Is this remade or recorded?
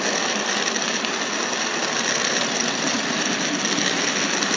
recorded